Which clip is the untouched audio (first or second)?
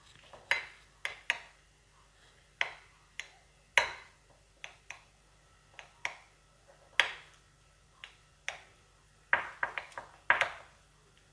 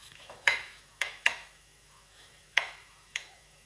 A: first